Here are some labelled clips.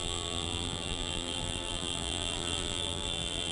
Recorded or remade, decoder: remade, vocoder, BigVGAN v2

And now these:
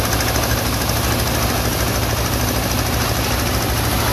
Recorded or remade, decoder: recorded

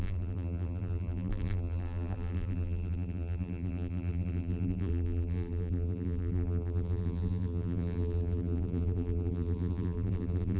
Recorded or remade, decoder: remade, vocoder, BigVGAN v2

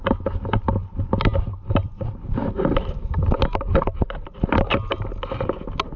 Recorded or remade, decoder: recorded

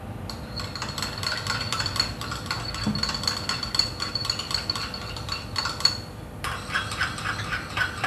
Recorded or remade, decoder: recorded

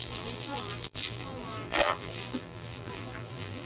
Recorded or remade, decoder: remade, vocoder, BigVGAN v2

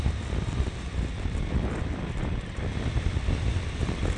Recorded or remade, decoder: remade, vocoder, BigVGAN v2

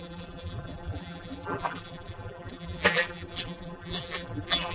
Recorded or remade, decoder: remade, vocoder, BigVGAN v2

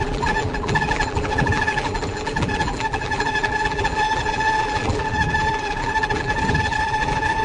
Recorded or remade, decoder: remade, vocoder, BigVGAN v2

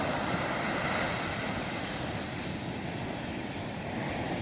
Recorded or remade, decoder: recorded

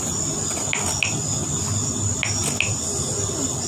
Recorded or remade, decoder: recorded